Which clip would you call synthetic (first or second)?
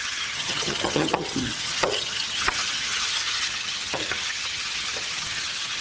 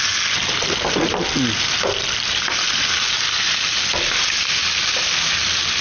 first